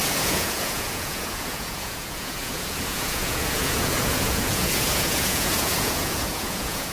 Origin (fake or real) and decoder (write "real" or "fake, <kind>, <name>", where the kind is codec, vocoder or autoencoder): fake, vocoder, Vocos